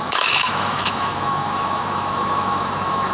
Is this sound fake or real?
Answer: fake